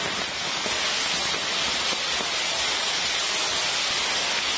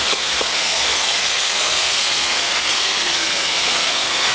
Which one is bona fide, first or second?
first